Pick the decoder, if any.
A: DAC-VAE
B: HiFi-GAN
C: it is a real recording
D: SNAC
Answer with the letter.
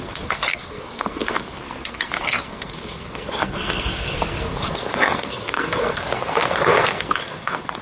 D